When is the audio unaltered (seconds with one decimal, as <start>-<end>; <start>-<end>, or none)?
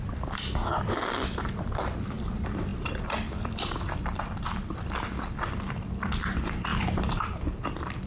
6.7-7.2